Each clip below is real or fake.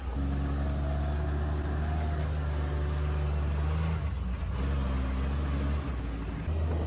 real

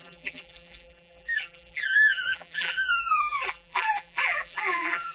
fake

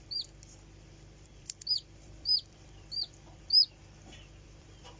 fake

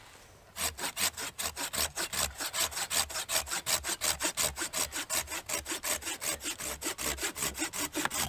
real